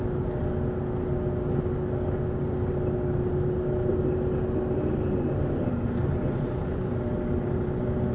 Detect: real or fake real